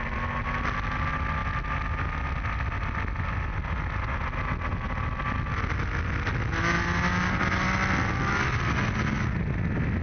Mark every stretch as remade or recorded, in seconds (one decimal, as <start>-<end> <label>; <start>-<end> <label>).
0.0-10.0 recorded